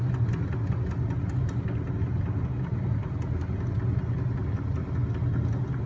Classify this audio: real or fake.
real